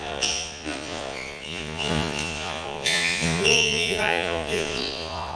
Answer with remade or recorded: remade